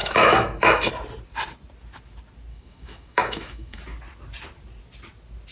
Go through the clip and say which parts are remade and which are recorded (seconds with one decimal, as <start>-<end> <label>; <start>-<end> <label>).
0.0-0.9 remade; 0.9-2.5 recorded; 2.5-3.8 remade; 3.8-5.5 recorded

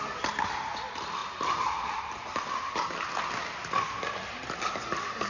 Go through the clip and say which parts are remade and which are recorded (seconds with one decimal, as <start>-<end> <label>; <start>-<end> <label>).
0.0-5.3 recorded

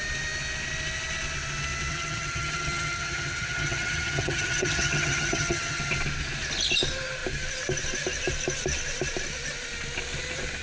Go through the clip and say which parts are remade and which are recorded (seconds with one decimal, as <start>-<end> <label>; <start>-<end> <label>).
0.0-1.9 recorded; 1.9-5.8 remade; 5.8-10.6 recorded

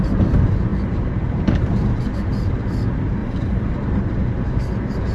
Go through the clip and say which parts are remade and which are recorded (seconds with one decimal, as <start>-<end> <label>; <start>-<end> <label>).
0.0-0.7 recorded; 0.7-2.1 remade; 2.1-3.2 recorded; 3.2-4.6 remade; 4.6-5.1 recorded